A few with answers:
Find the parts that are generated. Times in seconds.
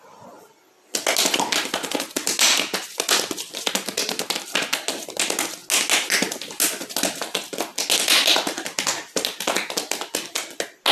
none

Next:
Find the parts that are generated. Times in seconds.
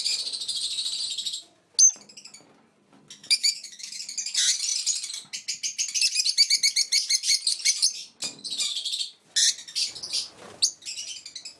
3.2-4.0 (autoencoder, DAC-VAE)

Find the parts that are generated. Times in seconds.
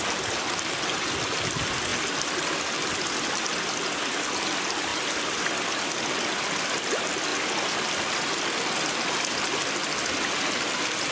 4.9-5.4 (vocoder, BigVGAN v2); 7.3-8.3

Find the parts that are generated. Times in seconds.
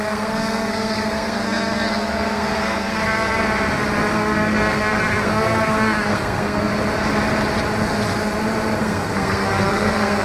0.0-3.4 (codec, SNAC); 4.1-6.7; 8.8-10.2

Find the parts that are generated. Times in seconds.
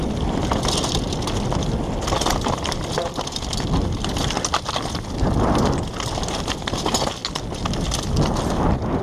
none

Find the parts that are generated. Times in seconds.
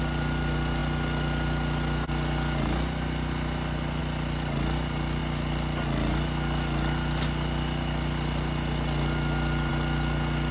none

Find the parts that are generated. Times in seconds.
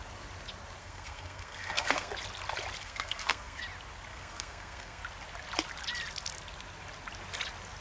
0.8-2.1 (codec, SNAC); 2.8-3.6; 4.1-5.0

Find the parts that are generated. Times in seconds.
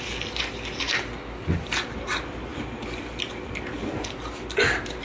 0.0-2.5 (vocoder, BigVGAN v2)